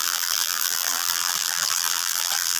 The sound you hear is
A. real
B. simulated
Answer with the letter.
B